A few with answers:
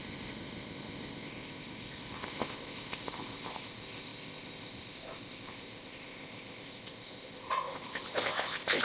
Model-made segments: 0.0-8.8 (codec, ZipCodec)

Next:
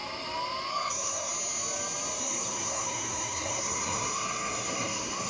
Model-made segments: 0.7-1.3 (codec, SNAC); 2.2-5.3

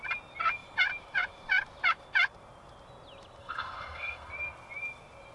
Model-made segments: 3.4-4.3 (codec, SNAC)

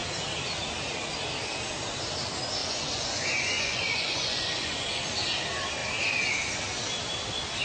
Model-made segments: 2.6-5.0 (vocoder, Vocos)

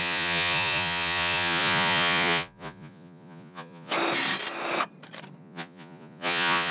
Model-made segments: 0.0-3.9 (vocoder, Vocos); 5.4-6.7

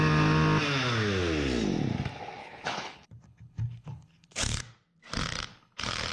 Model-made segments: 2.4-4.6 (codec, HILCodec); 5.5-6.1